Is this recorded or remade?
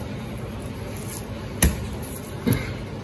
recorded